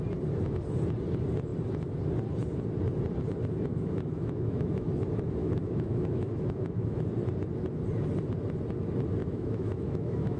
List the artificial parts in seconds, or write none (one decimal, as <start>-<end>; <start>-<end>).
3.7-4.9; 5.4-7.0; 9.2-10.4

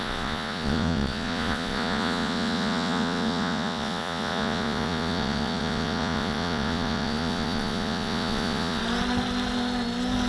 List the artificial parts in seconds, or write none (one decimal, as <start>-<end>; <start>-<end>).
0.0-8.8

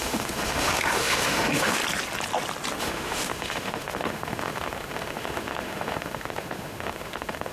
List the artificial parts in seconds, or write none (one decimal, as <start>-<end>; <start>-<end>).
0.0-1.8; 2.8-7.5

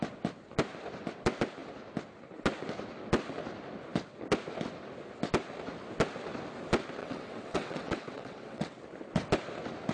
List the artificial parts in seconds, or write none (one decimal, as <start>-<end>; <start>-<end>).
7.0-8.8